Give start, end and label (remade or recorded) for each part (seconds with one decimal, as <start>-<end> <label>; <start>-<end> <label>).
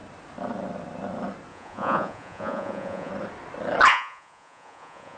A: 0.0-1.5 recorded; 1.5-3.1 remade; 3.1-3.9 recorded; 3.9-5.2 remade